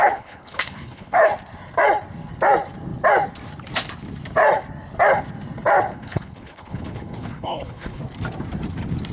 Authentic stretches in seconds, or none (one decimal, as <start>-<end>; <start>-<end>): 1.3-5.9; 8.0-9.1